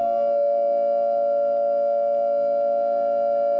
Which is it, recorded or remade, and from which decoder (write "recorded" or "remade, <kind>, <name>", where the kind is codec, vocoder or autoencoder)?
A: recorded